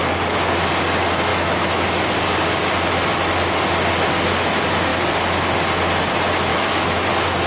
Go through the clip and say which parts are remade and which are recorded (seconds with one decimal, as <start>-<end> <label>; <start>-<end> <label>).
0.0-1.3 recorded; 1.3-1.9 remade; 1.9-6.5 recorded; 6.5-7.1 remade; 7.1-7.5 recorded